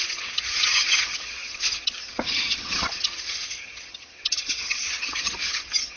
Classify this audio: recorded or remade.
remade